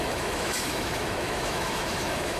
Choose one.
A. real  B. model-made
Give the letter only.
B